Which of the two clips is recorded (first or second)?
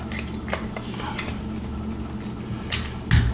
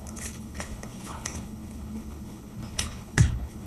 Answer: first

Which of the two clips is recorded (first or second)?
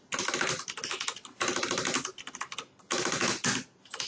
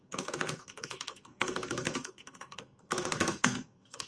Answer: first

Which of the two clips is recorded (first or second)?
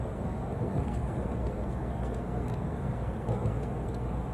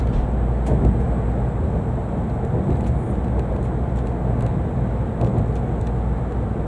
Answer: second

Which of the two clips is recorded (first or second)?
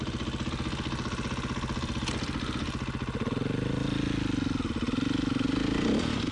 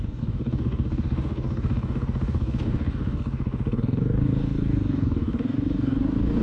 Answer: first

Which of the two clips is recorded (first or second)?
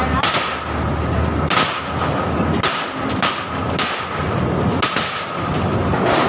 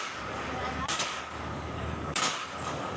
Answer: first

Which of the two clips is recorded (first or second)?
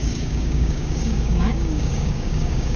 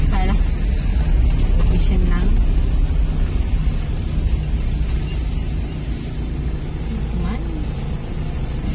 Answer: second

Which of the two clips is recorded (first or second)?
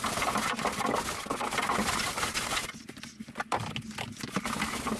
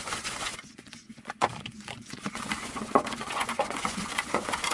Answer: first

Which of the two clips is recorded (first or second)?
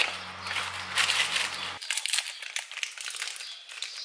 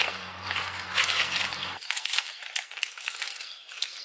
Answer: first